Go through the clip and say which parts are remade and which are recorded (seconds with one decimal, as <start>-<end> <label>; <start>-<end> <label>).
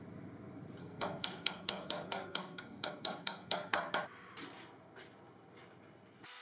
0.0-0.8 recorded; 0.8-3.9 remade; 3.9-6.4 recorded